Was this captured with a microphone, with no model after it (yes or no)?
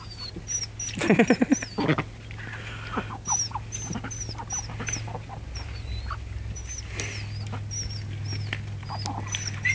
yes